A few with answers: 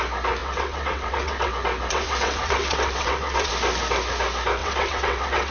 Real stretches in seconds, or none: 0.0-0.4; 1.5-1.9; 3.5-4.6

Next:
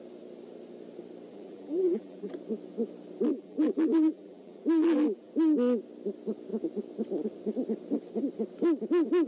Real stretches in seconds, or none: 0.0-1.3; 2.3-3.3; 5.3-9.3

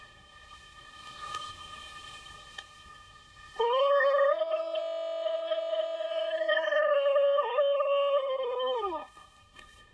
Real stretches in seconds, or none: none